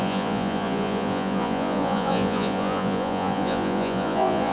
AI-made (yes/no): yes